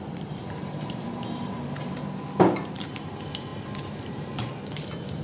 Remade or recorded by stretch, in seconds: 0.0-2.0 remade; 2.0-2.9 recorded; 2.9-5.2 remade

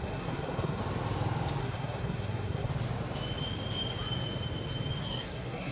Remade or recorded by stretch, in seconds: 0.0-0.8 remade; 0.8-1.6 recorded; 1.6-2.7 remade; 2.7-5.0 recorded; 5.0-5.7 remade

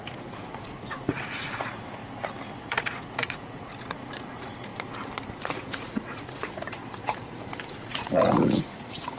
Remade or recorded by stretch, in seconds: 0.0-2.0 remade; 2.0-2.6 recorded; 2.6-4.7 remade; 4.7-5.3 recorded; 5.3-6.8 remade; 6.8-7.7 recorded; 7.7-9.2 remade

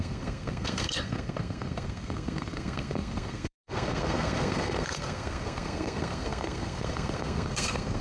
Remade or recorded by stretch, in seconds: 0.0-8.0 remade

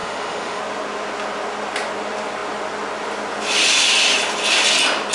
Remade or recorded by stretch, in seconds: 0.0-0.6 remade; 0.6-5.1 recorded

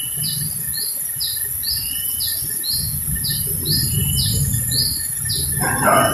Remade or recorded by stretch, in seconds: 0.0-6.1 recorded

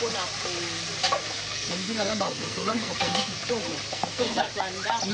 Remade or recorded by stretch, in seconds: 0.0-1.2 recorded; 1.2-3.5 remade; 3.5-3.9 recorded; 3.9-4.5 remade; 4.5-5.1 recorded